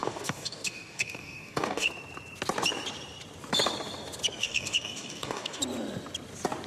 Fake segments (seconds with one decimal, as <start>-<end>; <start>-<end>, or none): 0.0-1.9; 4.4-5.6